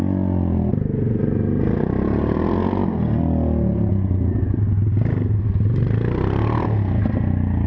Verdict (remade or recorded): recorded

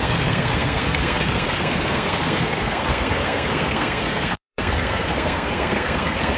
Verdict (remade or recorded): remade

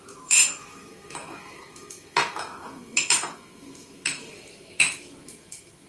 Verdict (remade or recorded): remade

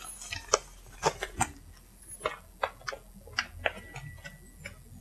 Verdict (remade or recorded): recorded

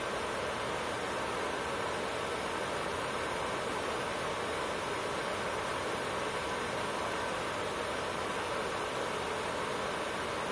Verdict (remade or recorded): recorded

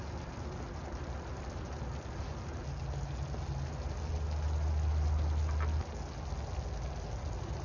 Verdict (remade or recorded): recorded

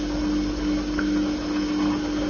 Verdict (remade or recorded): recorded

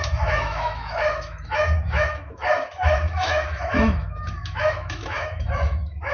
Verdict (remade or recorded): remade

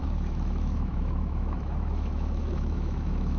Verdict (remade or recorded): remade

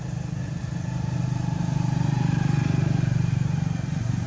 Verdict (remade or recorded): recorded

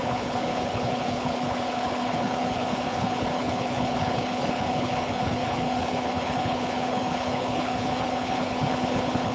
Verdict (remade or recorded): remade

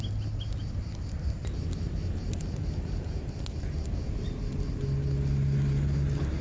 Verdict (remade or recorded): recorded